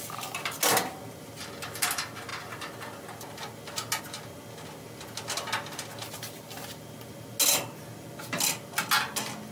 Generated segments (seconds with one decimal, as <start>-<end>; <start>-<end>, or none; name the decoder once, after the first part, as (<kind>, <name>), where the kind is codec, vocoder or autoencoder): none